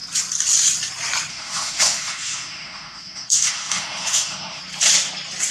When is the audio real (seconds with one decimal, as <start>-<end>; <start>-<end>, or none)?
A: 0.0-1.3; 4.6-5.5